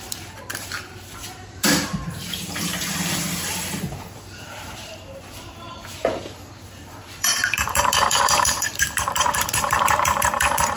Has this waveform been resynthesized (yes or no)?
yes